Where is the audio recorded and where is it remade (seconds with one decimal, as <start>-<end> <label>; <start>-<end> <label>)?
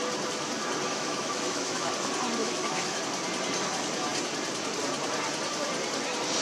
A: 0.0-0.9 recorded; 0.9-1.9 remade; 1.9-2.4 recorded; 2.4-3.0 remade; 3.0-6.4 recorded